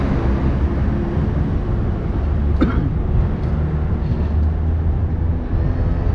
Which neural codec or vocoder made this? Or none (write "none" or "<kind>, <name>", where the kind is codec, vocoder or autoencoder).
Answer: none